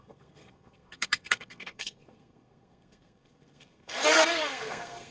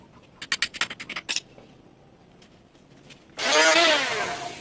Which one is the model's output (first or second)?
first